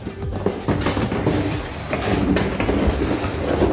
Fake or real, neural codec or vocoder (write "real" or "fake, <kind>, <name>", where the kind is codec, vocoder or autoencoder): real